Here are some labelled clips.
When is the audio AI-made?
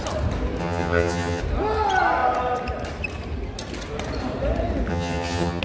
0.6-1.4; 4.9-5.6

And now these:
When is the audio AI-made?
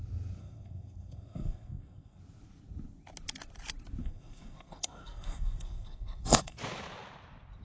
0.4-2.2; 4.0-6.6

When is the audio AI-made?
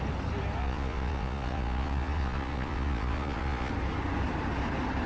0.6-3.7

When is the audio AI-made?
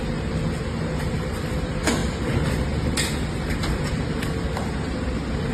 none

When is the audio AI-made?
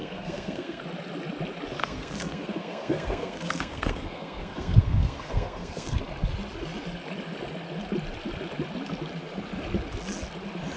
0.0-0.8; 1.8-6.0